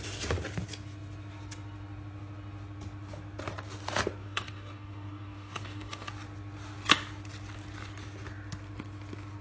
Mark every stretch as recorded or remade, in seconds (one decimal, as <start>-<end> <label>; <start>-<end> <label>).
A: 0.0-4.2 recorded; 4.2-6.1 remade; 6.1-9.4 recorded